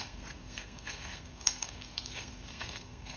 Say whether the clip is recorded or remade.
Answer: remade